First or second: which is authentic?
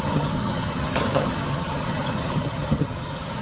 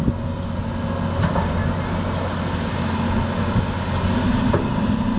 second